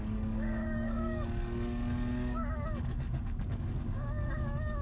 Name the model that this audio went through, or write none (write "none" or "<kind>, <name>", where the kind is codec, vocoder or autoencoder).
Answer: codec, DAC